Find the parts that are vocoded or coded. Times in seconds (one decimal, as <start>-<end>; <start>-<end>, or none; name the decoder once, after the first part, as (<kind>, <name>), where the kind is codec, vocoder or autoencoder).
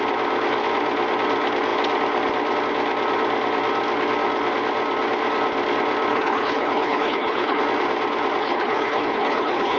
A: 6.1-7.6 (codec, HILCodec); 8.4-9.8